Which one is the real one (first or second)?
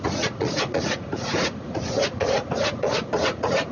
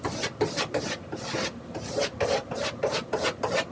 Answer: second